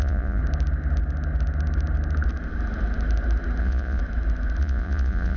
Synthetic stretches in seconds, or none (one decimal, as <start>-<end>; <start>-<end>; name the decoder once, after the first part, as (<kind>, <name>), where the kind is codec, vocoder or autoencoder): 0.0-0.4 (vocoder, Vocos); 3.6-4.0; 4.6-5.4

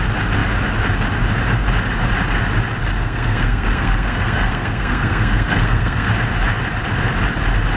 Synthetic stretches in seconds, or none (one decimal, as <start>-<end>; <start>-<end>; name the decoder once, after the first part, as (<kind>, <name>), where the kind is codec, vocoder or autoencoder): 2.8-6.1 (codec, SNAC)